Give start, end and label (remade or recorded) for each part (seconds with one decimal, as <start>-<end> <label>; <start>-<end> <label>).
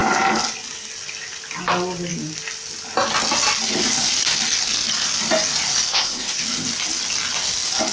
0.0-5.9 recorded; 5.9-6.4 remade; 6.4-7.9 recorded